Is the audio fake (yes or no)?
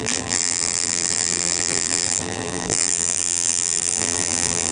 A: yes